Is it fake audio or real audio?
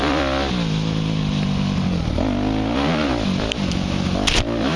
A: real